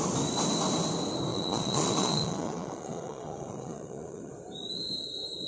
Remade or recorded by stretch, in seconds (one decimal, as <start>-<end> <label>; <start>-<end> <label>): 0.0-1.3 recorded; 1.3-4.3 remade; 4.3-5.5 recorded